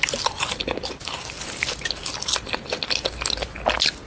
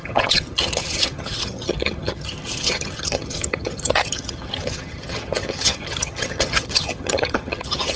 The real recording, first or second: first